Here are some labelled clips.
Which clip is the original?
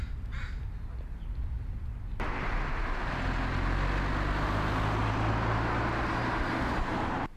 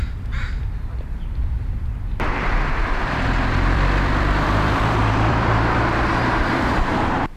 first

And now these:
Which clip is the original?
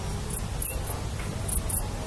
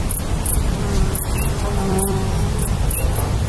first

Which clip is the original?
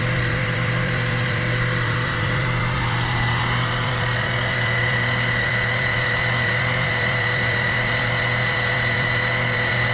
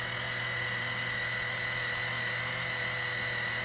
second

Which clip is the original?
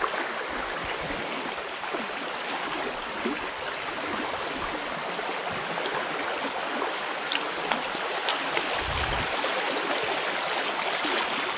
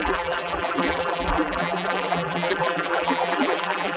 first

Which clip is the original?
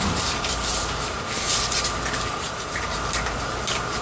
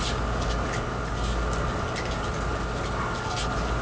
second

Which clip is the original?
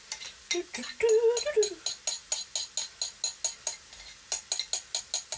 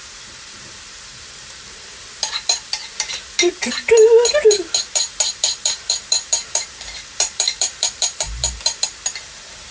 first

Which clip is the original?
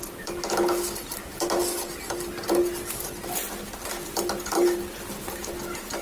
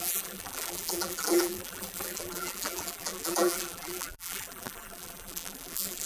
first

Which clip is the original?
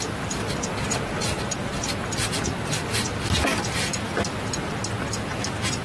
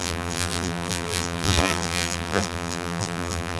first